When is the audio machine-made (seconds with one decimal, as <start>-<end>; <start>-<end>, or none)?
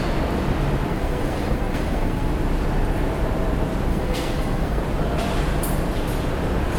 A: 0.9-2.3; 3.9-4.8